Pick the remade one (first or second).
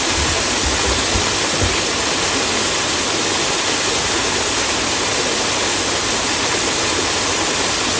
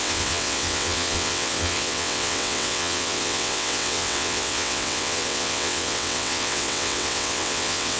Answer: second